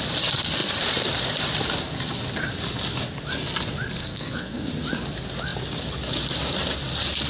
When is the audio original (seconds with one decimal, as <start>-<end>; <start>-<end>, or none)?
0.0-4.0; 4.7-7.3